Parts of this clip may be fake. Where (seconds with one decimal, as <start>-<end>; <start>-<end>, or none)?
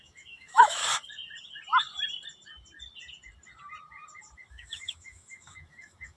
0.0-0.8; 4.5-6.2